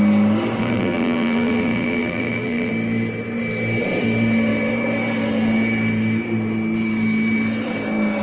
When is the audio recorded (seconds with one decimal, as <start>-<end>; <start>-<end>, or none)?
0.0-0.6; 2.7-8.2